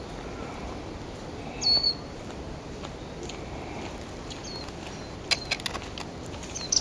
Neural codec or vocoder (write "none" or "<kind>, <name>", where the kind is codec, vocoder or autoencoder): none